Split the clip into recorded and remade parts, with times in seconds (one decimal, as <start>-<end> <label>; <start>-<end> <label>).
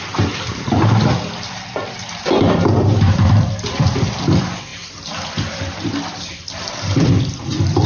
0.0-7.9 remade